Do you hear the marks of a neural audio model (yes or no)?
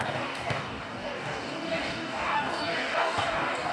yes